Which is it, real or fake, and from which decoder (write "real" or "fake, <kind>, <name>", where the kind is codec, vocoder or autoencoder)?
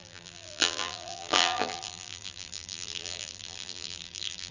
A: fake, vocoder, BigVGAN v2